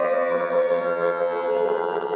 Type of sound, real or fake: fake